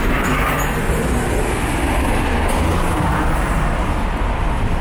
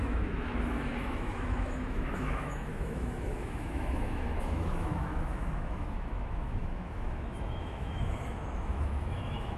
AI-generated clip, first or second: second